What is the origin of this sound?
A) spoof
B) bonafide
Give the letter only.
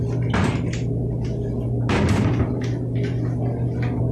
B